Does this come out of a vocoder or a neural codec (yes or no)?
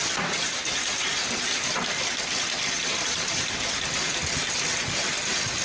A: no